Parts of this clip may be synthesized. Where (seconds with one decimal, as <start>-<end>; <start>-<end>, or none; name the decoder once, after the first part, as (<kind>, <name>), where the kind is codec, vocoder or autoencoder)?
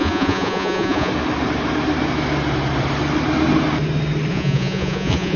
0.0-1.1 (vocoder, Vocos); 4.3-5.4